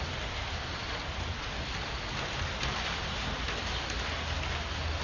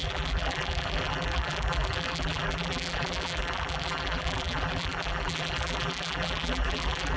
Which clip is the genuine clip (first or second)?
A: first